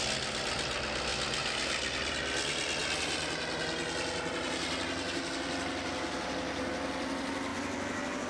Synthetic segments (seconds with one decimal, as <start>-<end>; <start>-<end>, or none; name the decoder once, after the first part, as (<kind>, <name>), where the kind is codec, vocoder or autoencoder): none